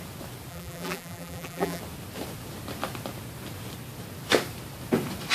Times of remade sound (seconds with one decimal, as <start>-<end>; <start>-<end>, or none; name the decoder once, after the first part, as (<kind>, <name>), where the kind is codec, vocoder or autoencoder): 0.5-1.8 (vocoder, BigVGAN v2)